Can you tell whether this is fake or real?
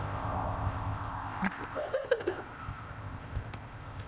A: fake